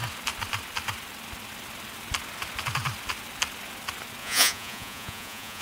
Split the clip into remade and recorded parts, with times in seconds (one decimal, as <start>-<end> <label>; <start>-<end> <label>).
0.0-4.2 recorded; 4.2-5.6 remade